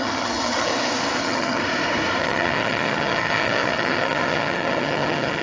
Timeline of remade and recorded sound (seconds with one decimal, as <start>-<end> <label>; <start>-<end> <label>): 0.0-0.7 remade; 0.7-1.2 recorded; 1.2-1.6 remade; 1.6-2.2 recorded; 2.2-5.4 remade

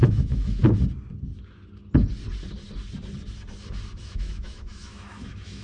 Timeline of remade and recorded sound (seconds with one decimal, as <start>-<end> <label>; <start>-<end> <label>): 0.0-0.6 remade; 0.6-4.0 recorded; 4.0-5.6 remade

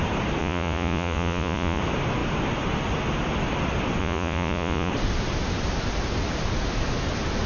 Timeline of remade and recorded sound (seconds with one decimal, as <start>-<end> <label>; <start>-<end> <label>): 0.0-0.4 recorded; 0.4-1.8 remade; 1.8-4.0 recorded; 4.0-4.9 remade; 4.9-7.5 recorded

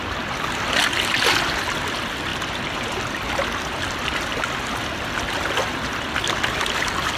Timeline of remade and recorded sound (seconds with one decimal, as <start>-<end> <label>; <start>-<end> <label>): 0.0-7.2 recorded

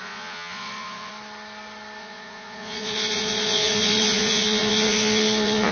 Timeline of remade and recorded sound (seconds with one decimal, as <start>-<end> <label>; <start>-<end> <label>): 0.0-1.1 remade; 1.1-2.0 recorded; 2.0-5.7 remade

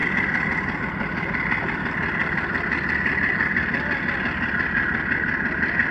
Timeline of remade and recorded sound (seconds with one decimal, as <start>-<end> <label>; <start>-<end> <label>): 0.0-0.8 remade; 0.8-5.9 recorded

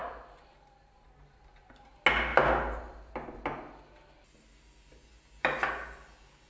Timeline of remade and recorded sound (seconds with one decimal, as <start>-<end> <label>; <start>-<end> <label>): 0.0-1.9 remade; 1.9-6.5 recorded

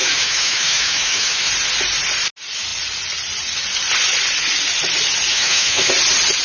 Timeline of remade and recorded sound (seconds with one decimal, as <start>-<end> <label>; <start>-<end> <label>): 0.0-1.5 remade; 1.5-5.3 recorded; 5.3-5.9 remade; 5.9-6.4 recorded